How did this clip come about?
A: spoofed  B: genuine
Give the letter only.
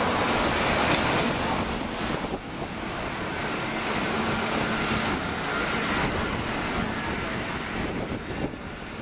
B